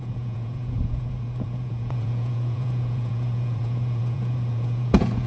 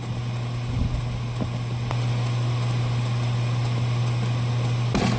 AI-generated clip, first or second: first